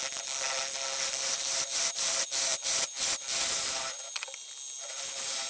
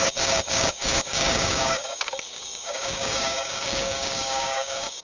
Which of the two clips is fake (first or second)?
second